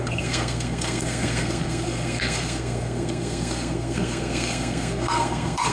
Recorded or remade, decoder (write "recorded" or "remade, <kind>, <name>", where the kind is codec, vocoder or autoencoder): remade, codec, SNAC